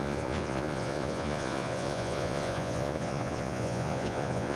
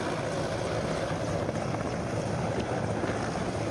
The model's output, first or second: first